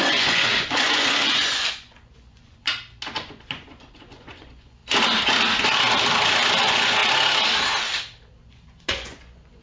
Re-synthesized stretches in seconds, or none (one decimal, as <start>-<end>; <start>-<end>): 0.0-2.7; 3.2-4.8; 6.6-7.0; 8.4-9.6